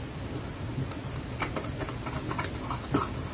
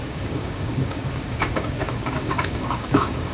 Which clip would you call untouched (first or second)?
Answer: first